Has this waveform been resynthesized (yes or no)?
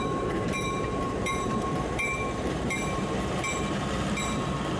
yes